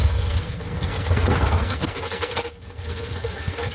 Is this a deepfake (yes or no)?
yes